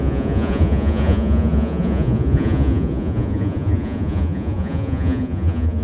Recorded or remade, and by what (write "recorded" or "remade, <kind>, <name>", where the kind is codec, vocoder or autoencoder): remade, vocoder, Vocos